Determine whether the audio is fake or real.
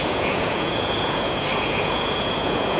fake